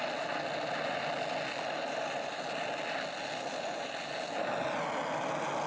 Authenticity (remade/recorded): recorded